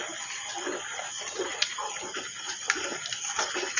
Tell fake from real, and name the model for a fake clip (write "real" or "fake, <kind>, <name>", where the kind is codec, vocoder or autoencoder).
real